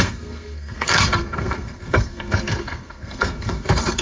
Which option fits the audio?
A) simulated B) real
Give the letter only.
A